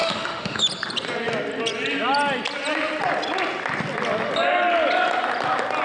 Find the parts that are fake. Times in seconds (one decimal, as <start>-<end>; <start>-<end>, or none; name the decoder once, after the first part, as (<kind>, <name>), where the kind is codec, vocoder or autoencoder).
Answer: 0.0-0.6 (autoencoder, DAC-VAE)